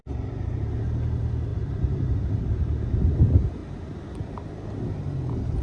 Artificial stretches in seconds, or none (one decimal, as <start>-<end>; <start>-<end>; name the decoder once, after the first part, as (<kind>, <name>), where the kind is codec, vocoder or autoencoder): none

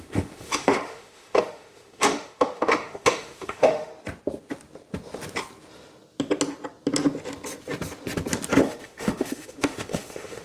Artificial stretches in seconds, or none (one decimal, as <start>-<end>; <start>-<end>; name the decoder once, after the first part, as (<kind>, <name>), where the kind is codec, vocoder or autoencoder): 0.0-3.9 (autoencoder, DAC-VAE); 8.6-10.4

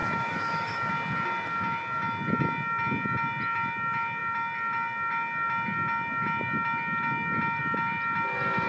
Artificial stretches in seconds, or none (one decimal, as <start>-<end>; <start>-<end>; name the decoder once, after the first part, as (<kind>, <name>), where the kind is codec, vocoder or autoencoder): 0.0-0.9 (autoencoder, DAC-VAE)

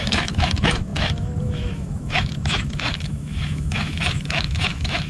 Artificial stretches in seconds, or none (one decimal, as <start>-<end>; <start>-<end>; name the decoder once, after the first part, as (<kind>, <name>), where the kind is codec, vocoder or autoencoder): 0.0-5.1 (autoencoder, DAC-VAE)